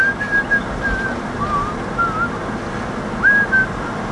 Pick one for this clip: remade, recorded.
recorded